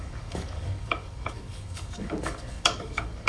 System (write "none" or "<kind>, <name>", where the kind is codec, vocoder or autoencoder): codec, DAC